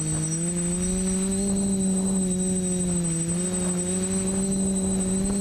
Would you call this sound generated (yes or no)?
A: no